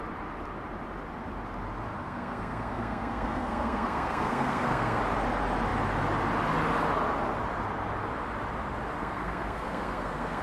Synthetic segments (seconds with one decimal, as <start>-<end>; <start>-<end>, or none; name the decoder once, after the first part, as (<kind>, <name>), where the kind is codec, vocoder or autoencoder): 2.0-5.0 (codec, SNAC); 9.0-10.4